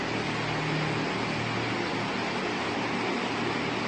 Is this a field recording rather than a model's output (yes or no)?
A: yes